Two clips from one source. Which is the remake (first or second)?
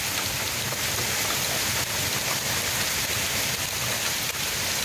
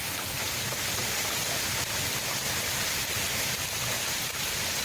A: second